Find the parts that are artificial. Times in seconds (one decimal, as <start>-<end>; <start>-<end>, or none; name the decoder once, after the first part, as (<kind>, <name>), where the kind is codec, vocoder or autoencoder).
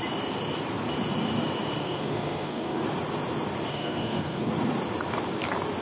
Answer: 1.8-2.8 (codec, SNAC); 3.7-4.5